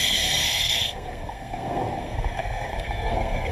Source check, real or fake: fake